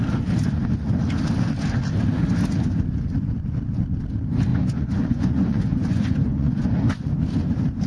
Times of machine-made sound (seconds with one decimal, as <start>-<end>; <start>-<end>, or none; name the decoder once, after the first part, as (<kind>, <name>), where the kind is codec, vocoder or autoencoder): 4.5-7.1 (vocoder, Vocos)